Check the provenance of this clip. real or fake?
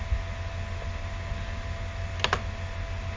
real